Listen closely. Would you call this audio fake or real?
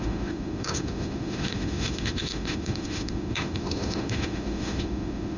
fake